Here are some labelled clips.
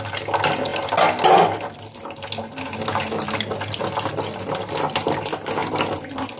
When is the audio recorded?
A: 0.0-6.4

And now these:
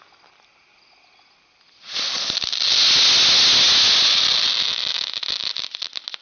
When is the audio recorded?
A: 0.0-6.2

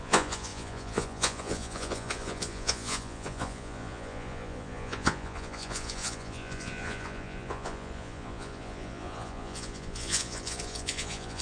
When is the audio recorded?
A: none